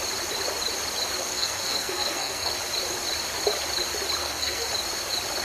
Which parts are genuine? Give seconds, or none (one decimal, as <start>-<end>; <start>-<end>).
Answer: 0.0-1.2; 2.5-4.2; 4.7-5.4